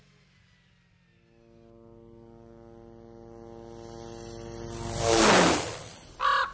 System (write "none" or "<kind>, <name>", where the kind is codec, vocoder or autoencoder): none